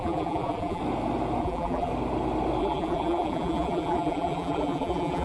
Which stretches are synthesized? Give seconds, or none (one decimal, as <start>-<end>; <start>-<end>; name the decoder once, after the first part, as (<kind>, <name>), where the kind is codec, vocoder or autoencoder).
0.0-0.8 (vocoder, BigVGAN v2); 1.4-1.9; 2.6-5.2